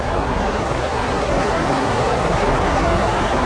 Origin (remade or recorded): remade